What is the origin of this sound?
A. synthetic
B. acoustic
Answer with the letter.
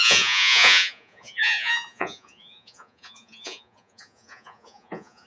A